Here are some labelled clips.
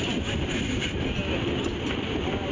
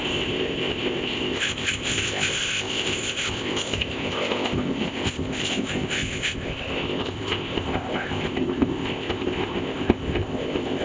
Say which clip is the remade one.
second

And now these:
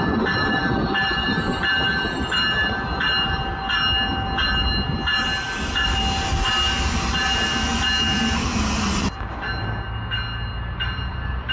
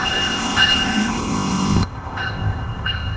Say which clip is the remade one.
second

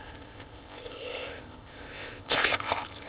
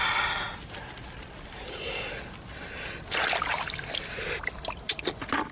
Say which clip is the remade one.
first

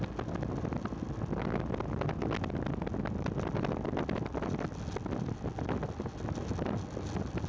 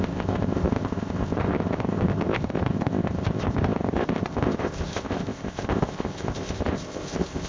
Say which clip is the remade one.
second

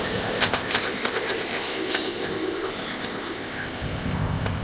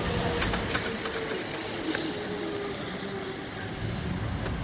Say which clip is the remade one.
first